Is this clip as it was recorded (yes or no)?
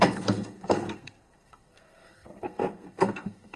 no